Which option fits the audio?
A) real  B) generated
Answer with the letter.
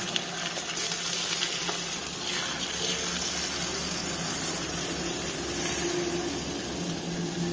A